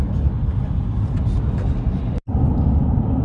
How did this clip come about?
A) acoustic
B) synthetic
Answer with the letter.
A